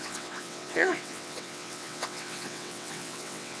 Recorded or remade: remade